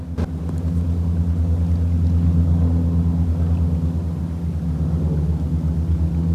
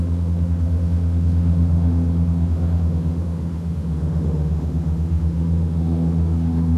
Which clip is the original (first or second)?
first